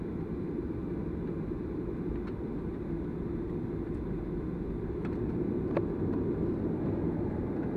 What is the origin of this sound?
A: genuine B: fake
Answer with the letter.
A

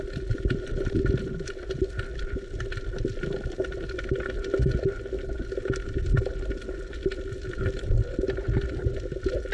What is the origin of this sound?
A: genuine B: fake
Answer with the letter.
A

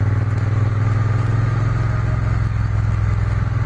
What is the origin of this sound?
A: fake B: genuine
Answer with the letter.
B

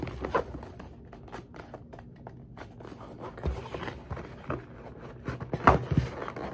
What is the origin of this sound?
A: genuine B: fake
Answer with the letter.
A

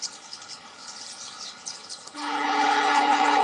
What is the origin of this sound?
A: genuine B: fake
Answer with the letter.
B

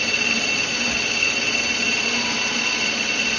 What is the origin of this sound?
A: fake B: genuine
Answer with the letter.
B